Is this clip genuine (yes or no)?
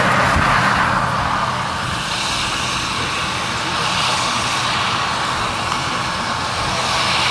yes